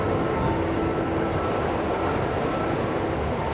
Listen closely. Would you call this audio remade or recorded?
recorded